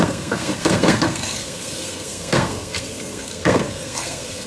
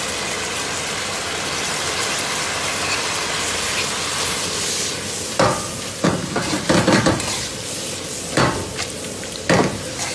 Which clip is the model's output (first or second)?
first